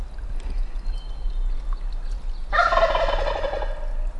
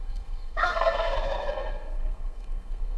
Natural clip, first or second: first